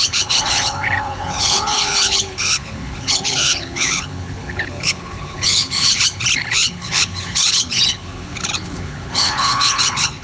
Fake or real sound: fake